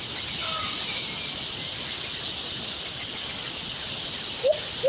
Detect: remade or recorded recorded